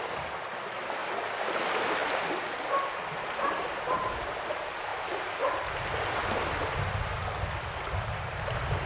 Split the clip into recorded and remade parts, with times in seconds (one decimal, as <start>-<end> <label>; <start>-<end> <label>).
0.0-8.9 recorded